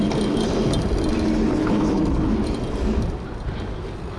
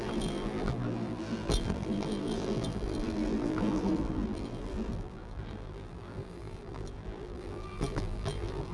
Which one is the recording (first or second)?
first